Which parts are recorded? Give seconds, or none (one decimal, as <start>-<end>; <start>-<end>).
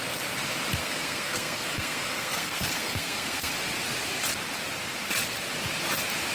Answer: 0.0-0.8; 3.5-6.3